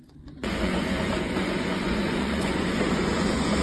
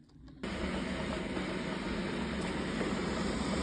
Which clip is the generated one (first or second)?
first